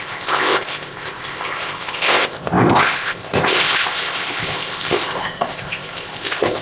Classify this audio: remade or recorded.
remade